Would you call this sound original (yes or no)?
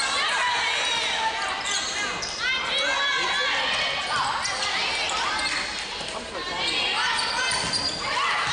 yes